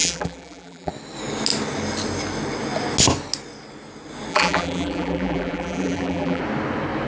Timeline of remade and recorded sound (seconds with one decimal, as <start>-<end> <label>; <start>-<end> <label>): 0.0-0.9 remade; 0.9-4.3 recorded; 4.3-6.4 remade; 6.4-7.1 recorded